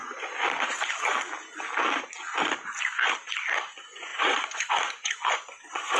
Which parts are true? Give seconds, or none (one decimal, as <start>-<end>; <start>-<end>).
0.0-3.6